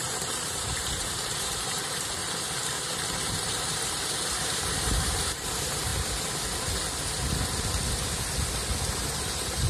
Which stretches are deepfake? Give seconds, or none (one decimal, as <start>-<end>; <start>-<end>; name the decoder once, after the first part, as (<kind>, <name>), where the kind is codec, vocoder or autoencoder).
0.0-2.2 (vocoder, BigVGAN v2); 3.1-5.9; 9.1-9.7